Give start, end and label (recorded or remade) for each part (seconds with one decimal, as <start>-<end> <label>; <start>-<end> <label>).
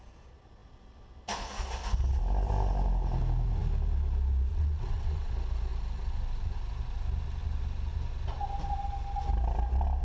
0.0-4.5 recorded; 4.5-5.3 remade; 5.3-10.0 recorded